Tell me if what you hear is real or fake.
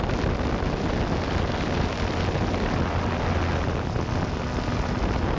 real